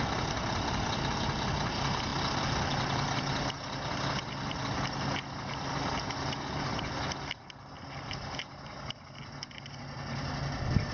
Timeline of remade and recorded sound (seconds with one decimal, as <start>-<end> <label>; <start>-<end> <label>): 0.0-2.1 remade; 2.1-6.0 recorded; 6.0-6.7 remade; 6.7-10.9 recorded